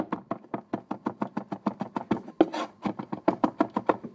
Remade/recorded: recorded